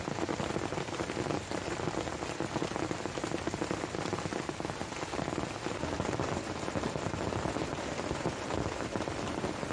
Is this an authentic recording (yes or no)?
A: yes